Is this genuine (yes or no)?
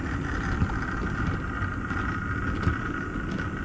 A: yes